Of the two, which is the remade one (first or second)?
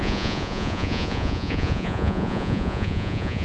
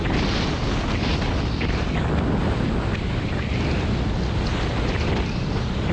first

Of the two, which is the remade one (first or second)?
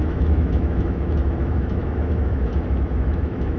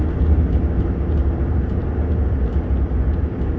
first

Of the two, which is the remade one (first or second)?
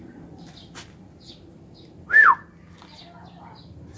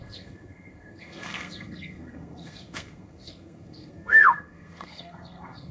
second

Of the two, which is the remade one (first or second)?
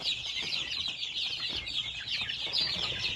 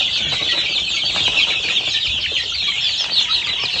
first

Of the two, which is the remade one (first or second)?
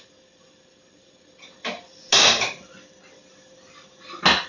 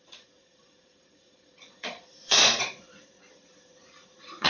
second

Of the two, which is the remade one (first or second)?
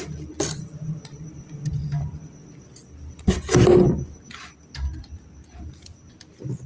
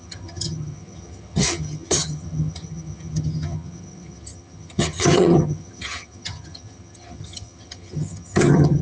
second